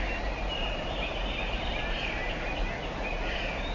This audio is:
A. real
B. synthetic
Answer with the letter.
A